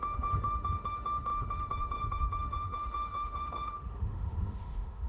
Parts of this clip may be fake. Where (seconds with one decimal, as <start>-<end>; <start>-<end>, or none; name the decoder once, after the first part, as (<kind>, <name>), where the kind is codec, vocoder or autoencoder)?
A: 0.0-5.1 (autoencoder, DAC-VAE)